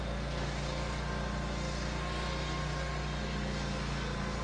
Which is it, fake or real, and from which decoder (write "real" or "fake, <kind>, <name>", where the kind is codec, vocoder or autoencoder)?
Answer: real